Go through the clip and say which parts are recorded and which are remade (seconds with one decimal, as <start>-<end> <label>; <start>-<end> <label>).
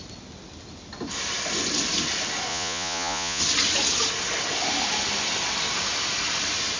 0.0-2.5 recorded; 2.5-3.4 remade; 3.4-6.8 recorded